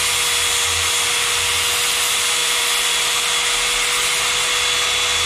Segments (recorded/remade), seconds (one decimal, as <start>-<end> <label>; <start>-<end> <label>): 0.0-2.4 recorded; 2.4-2.9 remade; 2.9-5.3 recorded